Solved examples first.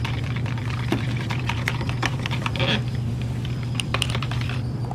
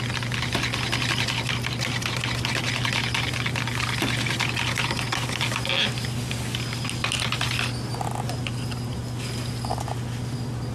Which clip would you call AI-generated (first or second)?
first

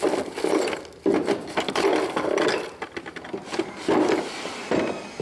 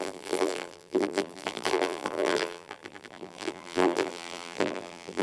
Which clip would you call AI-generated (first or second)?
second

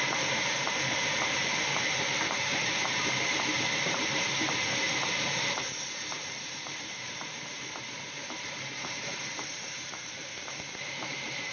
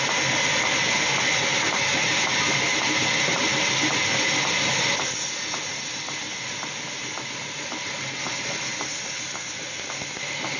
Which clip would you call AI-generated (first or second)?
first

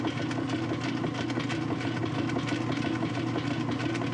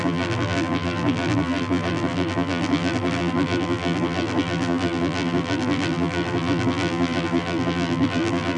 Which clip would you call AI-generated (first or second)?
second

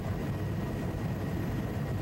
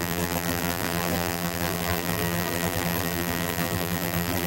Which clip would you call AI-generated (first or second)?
second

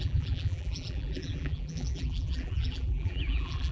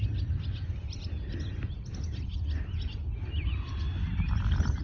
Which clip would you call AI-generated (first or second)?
first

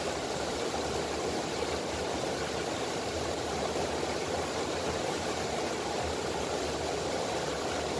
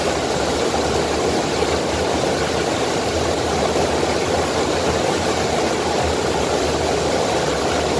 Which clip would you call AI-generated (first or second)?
first